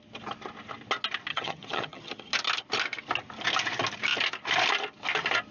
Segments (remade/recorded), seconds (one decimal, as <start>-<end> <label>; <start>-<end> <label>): 0.0-1.3 recorded; 1.3-2.3 remade; 2.3-5.5 recorded

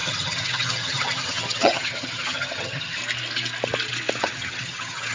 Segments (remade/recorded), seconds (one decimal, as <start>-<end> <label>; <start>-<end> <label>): 0.0-3.0 remade; 3.0-4.2 recorded; 4.2-5.1 remade

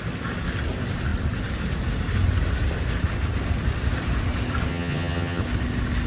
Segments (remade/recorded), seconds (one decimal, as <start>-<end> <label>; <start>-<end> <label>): 0.0-4.7 recorded; 4.7-5.4 remade; 5.4-6.1 recorded

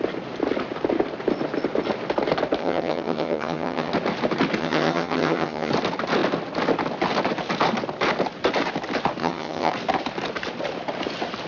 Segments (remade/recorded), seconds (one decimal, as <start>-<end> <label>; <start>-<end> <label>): 0.0-2.6 recorded; 2.6-3.9 remade; 3.9-4.6 recorded; 4.6-5.7 remade; 5.7-9.2 recorded; 9.2-9.7 remade; 9.7-11.5 recorded

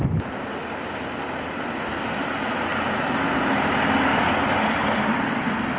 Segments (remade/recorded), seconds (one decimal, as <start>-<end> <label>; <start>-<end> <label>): 0.0-5.8 recorded

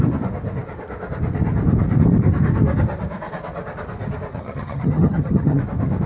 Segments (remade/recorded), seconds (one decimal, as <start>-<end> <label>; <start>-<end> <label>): 0.0-4.3 recorded; 4.3-5.6 remade; 5.6-6.1 recorded

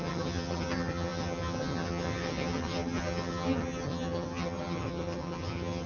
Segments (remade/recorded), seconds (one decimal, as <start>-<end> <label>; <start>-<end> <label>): 0.0-5.9 remade